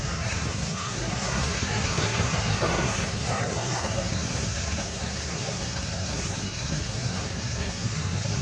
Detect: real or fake fake